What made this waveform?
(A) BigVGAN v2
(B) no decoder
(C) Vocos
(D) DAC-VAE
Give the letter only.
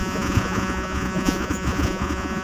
C